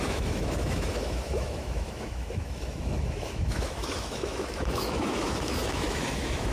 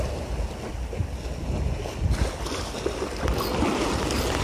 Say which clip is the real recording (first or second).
second